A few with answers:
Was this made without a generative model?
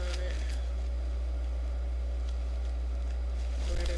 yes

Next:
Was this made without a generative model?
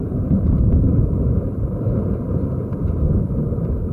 no